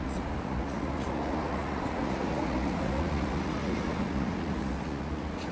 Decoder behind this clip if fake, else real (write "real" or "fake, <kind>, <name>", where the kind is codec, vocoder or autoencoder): fake, vocoder, Vocos